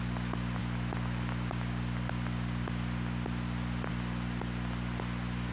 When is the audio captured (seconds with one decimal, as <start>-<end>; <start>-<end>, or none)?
0.0-5.5